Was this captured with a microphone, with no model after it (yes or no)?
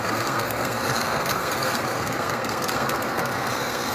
no